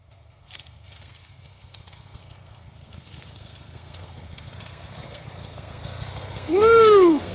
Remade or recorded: remade